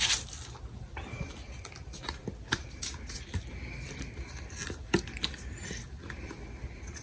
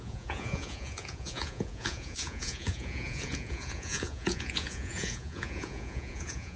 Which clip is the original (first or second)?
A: first